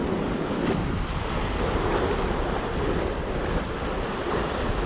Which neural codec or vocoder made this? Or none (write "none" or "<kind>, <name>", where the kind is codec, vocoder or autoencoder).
none